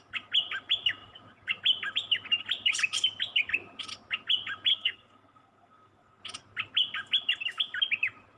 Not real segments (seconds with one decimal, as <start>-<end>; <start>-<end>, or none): 4.7-6.2